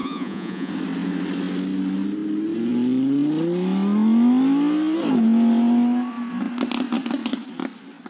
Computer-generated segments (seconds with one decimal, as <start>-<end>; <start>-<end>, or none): 0.0-0.7